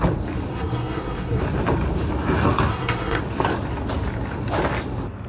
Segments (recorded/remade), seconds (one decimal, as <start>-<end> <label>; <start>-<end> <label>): 0.0-0.5 recorded; 0.5-1.4 remade; 1.4-2.7 recorded; 2.7-3.2 remade; 3.2-5.3 recorded